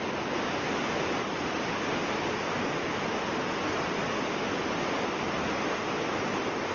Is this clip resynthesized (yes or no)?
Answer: no